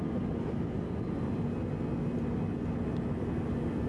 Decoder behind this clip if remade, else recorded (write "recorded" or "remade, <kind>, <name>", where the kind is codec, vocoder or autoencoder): recorded